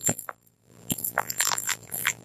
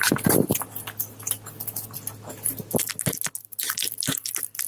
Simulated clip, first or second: first